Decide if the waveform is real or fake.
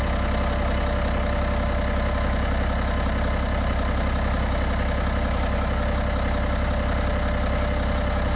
real